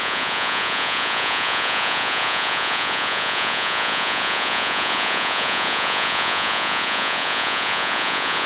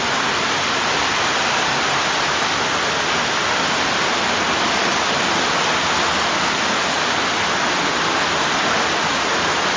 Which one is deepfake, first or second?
first